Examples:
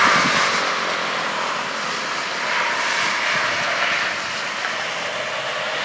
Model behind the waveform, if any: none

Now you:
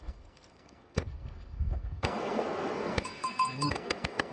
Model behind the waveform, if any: codec, SNAC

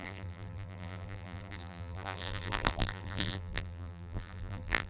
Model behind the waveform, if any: vocoder, BigVGAN v2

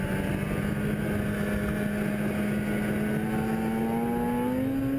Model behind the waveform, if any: none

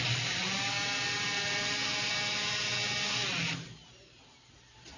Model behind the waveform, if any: none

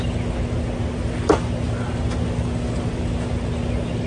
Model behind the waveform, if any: none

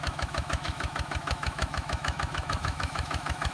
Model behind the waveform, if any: autoencoder, DAC-VAE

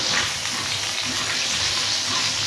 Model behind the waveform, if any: none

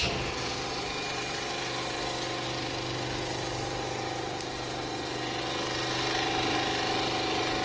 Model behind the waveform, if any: none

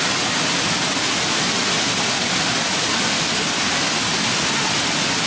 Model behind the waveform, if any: none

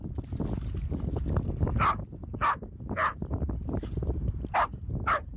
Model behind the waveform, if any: none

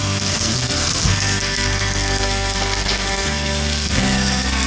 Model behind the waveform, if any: codec, SNAC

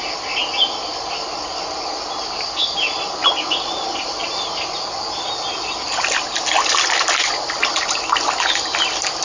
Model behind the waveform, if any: none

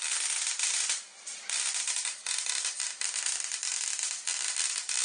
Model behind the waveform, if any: vocoder, BigVGAN v2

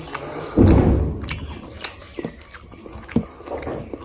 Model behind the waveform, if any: none